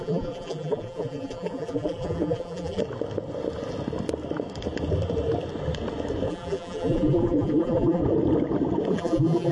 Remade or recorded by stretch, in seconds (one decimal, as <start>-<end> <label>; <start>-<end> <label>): 0.0-2.8 remade; 2.8-6.3 recorded; 6.3-8.0 remade; 8.0-8.9 recorded; 8.9-9.5 remade